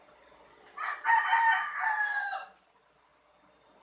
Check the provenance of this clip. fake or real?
real